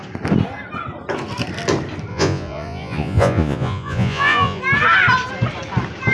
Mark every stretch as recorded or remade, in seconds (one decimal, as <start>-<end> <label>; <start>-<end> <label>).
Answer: 0.0-2.1 recorded; 2.1-4.6 remade; 4.6-6.1 recorded